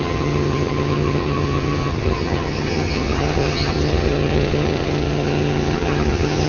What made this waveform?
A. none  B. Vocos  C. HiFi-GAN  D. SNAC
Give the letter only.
C